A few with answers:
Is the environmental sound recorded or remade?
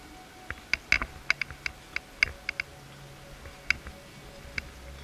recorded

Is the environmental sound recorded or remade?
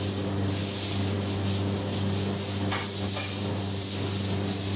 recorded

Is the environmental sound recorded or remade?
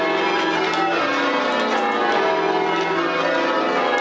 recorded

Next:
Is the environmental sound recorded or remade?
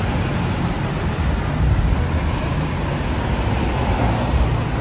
recorded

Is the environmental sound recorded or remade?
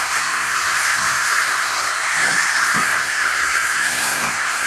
remade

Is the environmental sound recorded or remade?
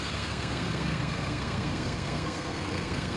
remade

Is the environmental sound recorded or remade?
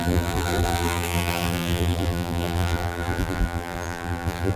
remade